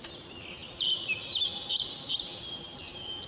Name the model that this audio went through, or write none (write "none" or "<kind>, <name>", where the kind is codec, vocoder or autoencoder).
none